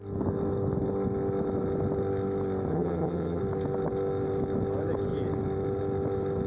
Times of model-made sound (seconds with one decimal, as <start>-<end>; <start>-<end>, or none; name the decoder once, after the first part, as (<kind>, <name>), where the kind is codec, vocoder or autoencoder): 2.7-3.4 (vocoder, HiFi-GAN)